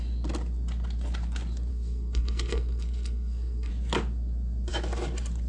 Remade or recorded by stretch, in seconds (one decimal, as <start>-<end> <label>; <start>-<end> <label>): 0.0-1.7 recorded; 1.7-3.7 remade; 3.7-5.5 recorded